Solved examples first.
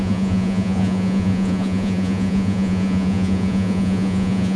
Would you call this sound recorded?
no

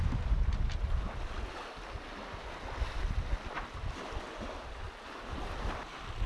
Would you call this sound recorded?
yes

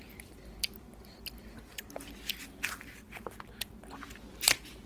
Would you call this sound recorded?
yes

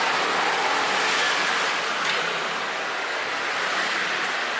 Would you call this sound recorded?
yes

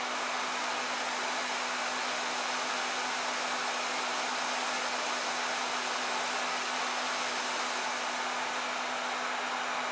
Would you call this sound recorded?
yes